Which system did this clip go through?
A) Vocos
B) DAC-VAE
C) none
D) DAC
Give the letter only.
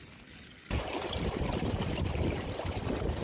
C